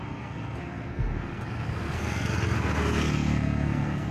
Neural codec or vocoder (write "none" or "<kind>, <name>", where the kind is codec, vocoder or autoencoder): codec, SNAC